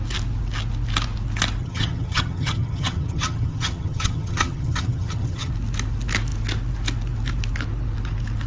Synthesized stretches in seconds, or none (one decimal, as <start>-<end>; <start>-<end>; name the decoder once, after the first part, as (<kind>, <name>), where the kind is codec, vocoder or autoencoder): 1.6-5.5 (vocoder, HiFi-GAN)